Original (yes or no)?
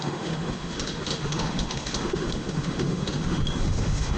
no